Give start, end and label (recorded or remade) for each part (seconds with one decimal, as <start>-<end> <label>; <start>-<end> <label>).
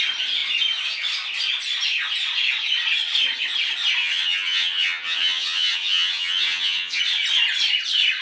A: 0.0-4.0 recorded; 4.0-7.0 remade; 7.0-8.2 recorded